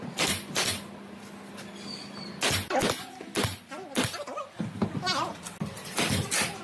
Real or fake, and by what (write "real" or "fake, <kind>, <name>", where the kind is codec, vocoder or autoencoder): real